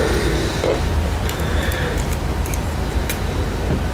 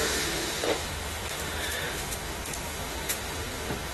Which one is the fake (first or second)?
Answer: second